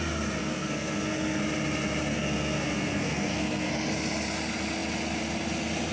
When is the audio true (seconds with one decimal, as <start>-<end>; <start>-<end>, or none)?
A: 0.0-0.4; 1.4-2.1; 3.7-5.9